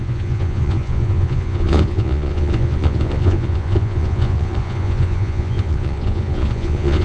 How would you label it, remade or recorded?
remade